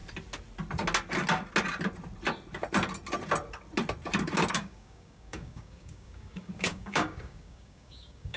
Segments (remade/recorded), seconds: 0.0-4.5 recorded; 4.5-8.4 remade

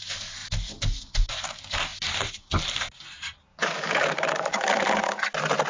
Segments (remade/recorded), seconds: 0.0-3.5 recorded; 3.5-5.2 remade; 5.2-5.7 recorded